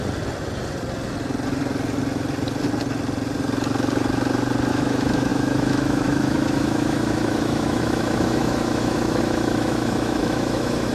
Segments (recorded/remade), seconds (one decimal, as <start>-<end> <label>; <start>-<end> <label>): 0.0-4.7 recorded; 4.7-10.9 remade